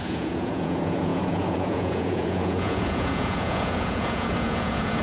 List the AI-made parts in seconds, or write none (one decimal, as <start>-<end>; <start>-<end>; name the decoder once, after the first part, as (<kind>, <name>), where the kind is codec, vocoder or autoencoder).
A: 0.0-5.0 (vocoder, Vocos)